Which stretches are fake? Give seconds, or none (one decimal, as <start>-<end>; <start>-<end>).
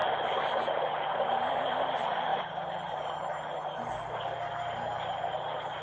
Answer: none